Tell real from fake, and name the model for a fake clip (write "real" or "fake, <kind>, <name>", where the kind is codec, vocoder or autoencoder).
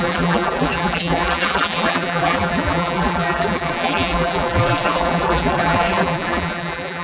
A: fake, vocoder, BigVGAN v2